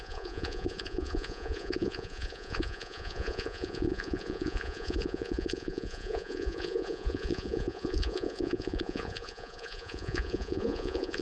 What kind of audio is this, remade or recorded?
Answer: remade